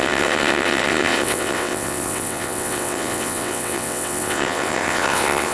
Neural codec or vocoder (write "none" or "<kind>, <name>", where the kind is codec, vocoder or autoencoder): vocoder, WaveNeXt